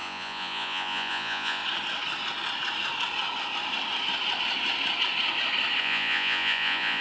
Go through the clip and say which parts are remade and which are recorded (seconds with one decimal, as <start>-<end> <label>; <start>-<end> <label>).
0.0-1.6 remade; 1.6-5.8 recorded; 5.8-7.0 remade